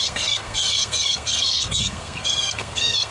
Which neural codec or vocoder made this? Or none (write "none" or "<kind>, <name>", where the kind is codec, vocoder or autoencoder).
codec, SNAC